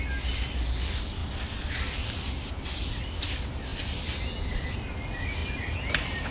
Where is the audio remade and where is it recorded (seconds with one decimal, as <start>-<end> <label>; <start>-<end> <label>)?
0.0-6.3 recorded